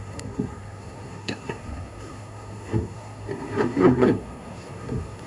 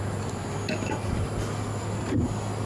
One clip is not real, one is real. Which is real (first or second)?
second